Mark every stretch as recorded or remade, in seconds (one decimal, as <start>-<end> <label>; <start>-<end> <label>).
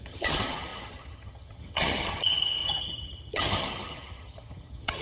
0.0-5.0 remade